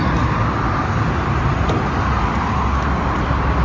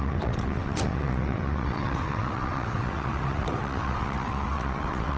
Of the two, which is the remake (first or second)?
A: second